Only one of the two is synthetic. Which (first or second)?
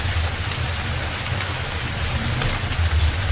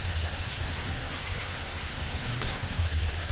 second